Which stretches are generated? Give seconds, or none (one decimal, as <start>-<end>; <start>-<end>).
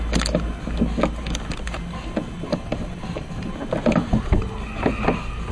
2.5-3.5